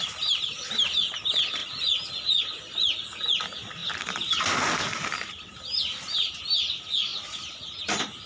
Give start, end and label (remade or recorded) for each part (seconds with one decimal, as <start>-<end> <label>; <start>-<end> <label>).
0.0-8.3 recorded